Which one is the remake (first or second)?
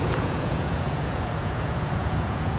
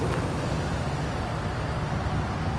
first